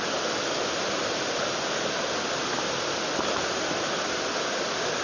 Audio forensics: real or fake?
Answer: real